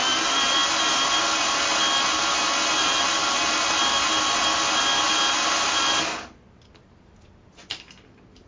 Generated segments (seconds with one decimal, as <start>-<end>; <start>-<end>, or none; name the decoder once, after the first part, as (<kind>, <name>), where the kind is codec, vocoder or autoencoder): none